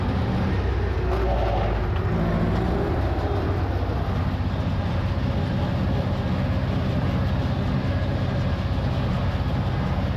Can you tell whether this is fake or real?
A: real